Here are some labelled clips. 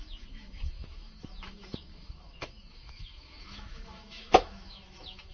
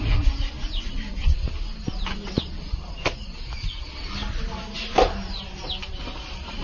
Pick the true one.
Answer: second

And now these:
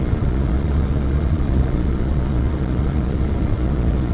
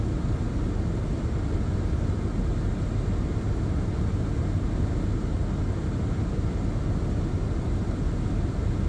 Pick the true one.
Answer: second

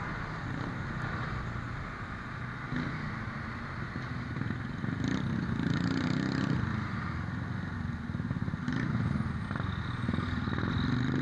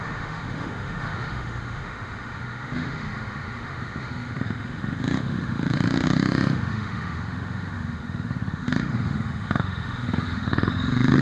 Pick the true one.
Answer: first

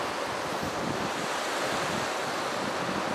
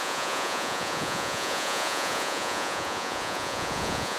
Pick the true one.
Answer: first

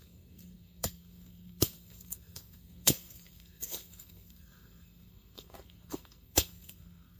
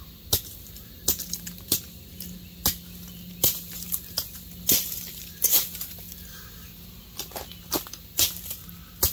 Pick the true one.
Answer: second